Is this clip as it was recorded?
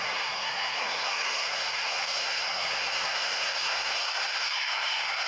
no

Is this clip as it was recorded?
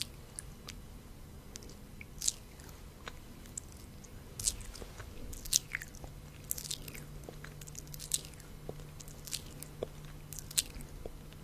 yes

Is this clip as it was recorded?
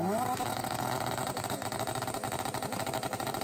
yes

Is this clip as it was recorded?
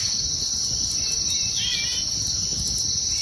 yes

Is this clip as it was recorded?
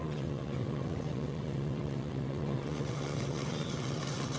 no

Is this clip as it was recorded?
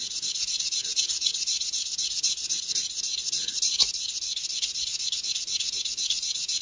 yes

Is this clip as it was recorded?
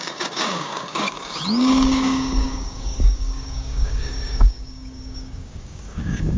no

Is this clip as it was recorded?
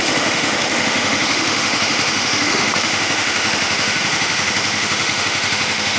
no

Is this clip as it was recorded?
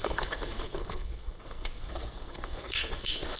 no